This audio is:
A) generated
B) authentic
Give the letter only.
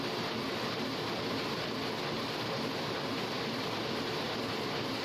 B